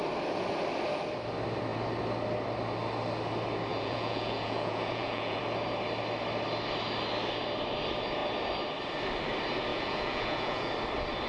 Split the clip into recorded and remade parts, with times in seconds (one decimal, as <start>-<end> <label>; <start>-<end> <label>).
0.0-3.7 recorded; 3.7-5.4 remade; 5.4-9.7 recorded; 9.7-10.7 remade; 10.7-11.3 recorded